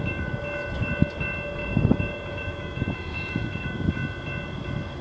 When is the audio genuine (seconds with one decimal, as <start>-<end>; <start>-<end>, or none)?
0.0-1.6; 3.9-5.0